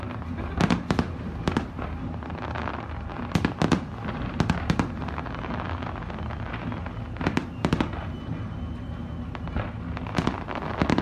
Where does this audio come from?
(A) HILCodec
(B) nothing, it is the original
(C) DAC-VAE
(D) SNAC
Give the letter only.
B